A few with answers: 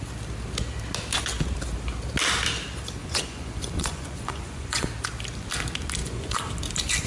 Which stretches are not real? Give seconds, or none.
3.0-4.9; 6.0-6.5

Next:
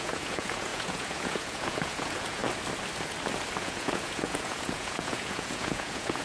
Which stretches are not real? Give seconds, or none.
0.0-2.4; 3.6-6.2